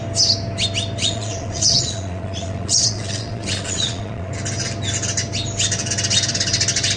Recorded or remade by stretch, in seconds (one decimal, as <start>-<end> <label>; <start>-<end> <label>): 0.0-1.0 recorded; 1.0-4.3 remade; 4.3-7.0 recorded